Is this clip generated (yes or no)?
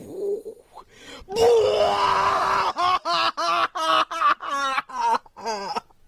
no